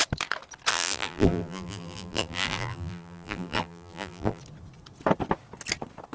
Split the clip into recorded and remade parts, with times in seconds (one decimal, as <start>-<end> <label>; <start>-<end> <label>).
0.0-0.7 recorded; 0.7-4.4 remade; 4.4-6.1 recorded